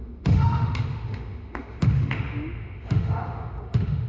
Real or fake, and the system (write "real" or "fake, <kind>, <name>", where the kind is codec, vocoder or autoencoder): fake, autoencoder, DAC-VAE